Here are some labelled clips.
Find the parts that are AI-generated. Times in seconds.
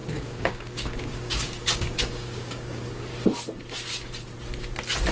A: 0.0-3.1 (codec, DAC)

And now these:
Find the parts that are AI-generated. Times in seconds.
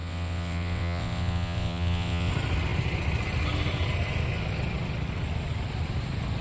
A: 0.0-2.3 (vocoder, WaveNeXt)